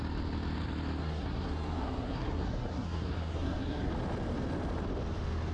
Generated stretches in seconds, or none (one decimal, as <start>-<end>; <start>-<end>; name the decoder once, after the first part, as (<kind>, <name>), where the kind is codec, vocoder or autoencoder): 1.0-3.9 (codec, SNAC)